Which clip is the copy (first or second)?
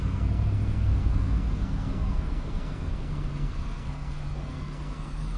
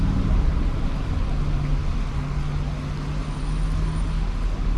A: first